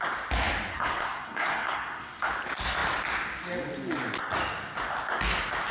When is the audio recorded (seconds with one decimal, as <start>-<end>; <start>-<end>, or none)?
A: 0.0-0.7; 2.3-5.7